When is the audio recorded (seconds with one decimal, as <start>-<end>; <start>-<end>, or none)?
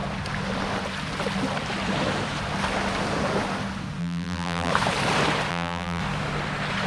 0.0-4.0; 4.7-5.5; 6.0-6.9